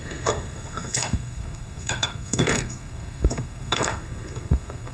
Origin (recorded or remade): remade